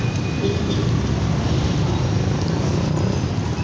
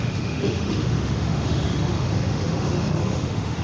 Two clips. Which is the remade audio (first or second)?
second